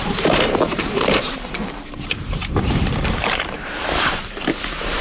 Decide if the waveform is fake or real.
fake